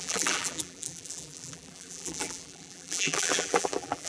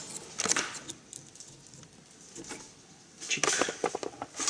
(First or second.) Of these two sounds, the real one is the second